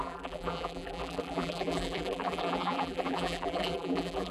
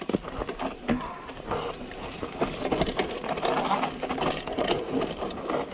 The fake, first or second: first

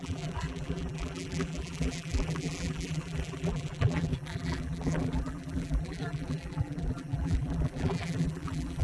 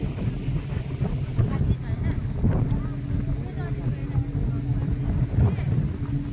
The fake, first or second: first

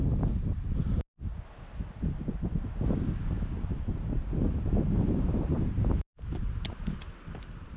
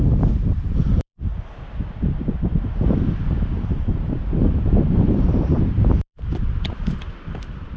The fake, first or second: second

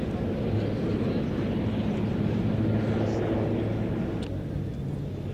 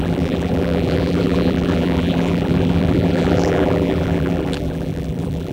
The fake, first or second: second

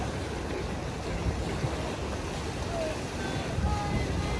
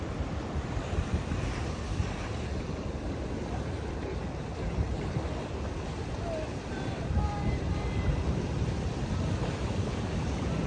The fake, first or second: second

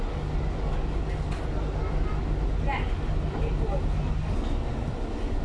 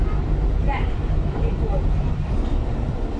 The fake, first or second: second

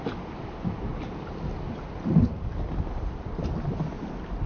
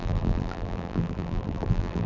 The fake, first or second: second